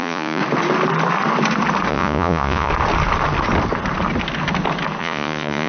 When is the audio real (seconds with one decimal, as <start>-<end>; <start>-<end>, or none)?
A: 0.4-1.9; 2.7-5.0